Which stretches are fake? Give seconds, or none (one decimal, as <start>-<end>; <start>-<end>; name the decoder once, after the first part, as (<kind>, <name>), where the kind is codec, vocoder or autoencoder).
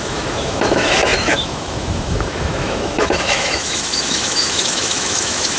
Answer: 0.0-5.6 (autoencoder, DAC-VAE)